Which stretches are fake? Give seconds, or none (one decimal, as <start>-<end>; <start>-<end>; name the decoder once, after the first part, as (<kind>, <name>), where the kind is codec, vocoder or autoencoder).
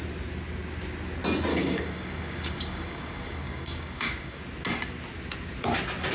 1.5-4.4 (codec, DAC)